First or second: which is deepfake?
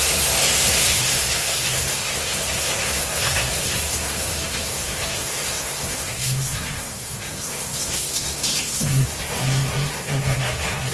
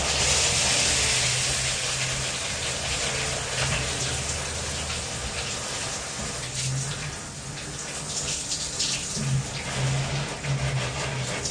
first